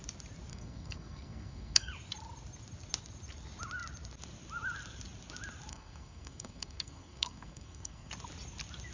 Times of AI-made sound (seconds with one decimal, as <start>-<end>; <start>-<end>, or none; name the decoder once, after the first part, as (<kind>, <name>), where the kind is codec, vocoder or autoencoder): 0.5-1.9 (codec, SNAC); 5.7-8.1